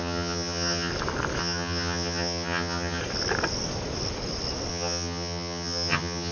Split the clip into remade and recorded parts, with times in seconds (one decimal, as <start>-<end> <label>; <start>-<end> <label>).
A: 0.0-0.9 remade; 0.9-1.4 recorded; 1.4-3.0 remade; 3.0-4.7 recorded; 4.7-6.3 remade